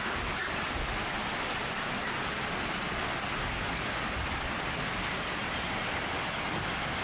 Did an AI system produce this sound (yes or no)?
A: no